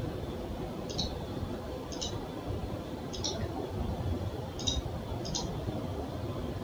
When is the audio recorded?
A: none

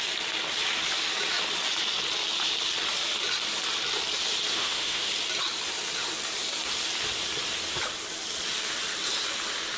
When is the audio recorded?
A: 0.0-4.5; 5.1-9.8

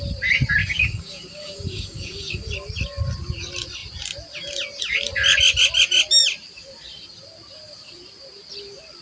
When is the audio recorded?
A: 0.0-0.6; 2.5-9.0

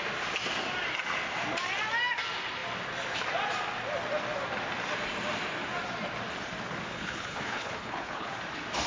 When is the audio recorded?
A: 0.0-6.9; 8.3-8.9